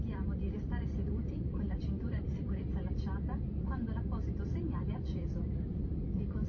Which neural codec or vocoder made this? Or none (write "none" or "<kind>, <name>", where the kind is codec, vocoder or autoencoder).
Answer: vocoder, BigVGAN v2